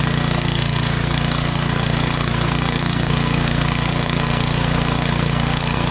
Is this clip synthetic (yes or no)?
yes